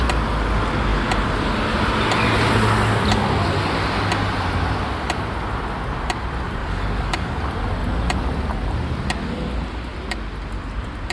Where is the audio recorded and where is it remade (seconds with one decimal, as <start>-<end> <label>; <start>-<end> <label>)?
0.0-6.6 recorded; 6.6-7.4 remade; 7.4-11.1 recorded